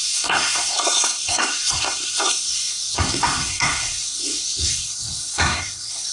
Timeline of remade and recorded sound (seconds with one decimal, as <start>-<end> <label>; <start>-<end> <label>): 0.0-6.1 remade